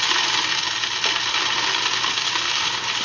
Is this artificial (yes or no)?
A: no